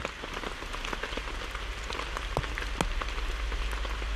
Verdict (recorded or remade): recorded